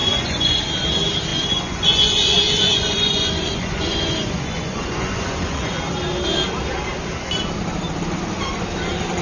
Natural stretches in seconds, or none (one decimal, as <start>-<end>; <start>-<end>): 0.6-1.3; 5.8-9.2